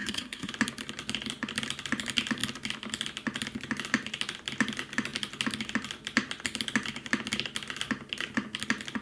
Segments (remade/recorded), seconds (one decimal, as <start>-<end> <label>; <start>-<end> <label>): 0.0-0.5 remade; 0.5-9.0 recorded